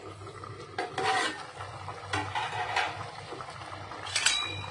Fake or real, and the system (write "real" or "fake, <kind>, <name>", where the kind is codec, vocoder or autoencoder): real